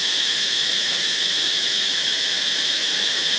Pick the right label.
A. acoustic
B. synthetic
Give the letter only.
B